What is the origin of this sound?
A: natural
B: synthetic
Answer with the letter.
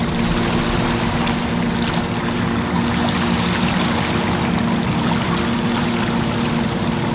A